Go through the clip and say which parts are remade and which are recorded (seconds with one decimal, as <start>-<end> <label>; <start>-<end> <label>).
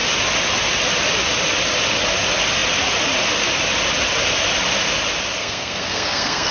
0.0-5.4 recorded; 5.4-6.5 remade